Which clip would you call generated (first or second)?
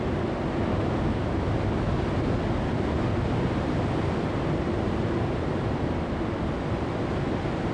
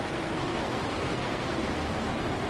second